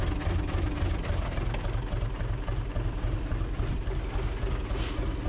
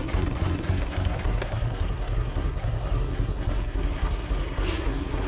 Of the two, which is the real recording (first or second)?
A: first